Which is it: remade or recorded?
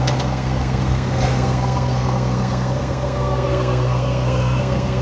remade